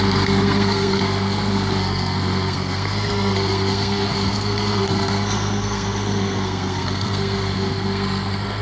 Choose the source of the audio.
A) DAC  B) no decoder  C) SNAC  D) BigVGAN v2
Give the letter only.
C